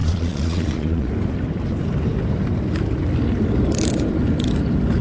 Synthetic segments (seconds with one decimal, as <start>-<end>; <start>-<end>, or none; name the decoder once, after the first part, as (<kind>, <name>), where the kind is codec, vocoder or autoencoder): 0.0-1.1 (vocoder, Vocos)